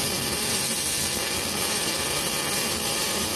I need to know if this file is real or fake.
real